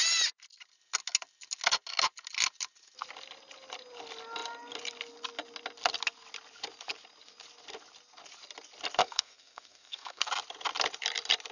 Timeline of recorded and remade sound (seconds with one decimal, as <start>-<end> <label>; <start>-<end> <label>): 0.0-9.0 recorded; 9.0-10.3 remade; 10.3-11.5 recorded